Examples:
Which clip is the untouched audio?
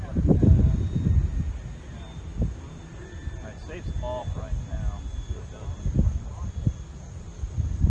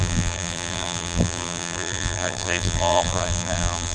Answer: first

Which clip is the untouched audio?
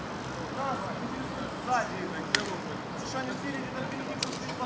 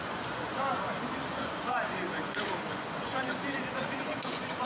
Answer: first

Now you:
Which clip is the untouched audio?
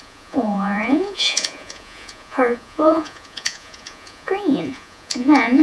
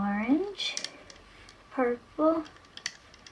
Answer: second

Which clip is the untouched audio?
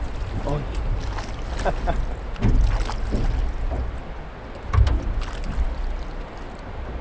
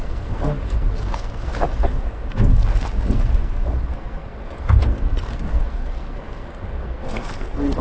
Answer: first